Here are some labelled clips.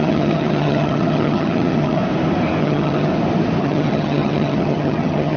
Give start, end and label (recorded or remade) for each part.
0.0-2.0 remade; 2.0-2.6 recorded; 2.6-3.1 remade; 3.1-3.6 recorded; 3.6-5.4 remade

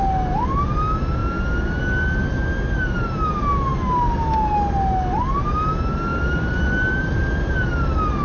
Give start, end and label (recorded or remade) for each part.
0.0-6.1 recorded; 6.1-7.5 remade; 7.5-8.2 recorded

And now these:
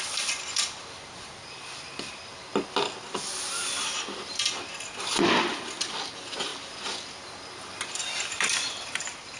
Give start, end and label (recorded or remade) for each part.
0.0-9.4 remade

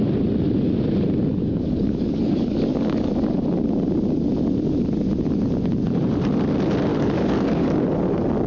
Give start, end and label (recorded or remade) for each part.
0.0-1.3 recorded; 1.3-3.1 remade; 3.1-6.9 recorded; 6.9-7.8 remade; 7.8-8.5 recorded

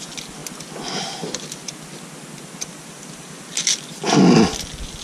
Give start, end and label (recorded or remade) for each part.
0.0-5.0 recorded

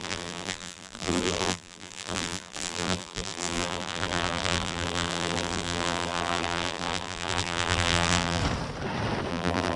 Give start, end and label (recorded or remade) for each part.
0.0-8.4 remade; 8.4-9.3 recorded; 9.3-9.8 remade